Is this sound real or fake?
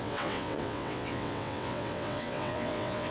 fake